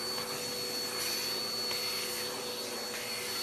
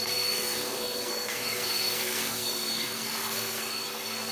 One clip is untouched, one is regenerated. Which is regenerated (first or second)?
second